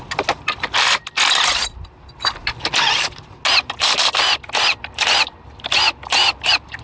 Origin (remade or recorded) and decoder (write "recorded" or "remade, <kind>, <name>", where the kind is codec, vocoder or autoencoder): recorded